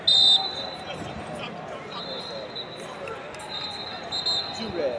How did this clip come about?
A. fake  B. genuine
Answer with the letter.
B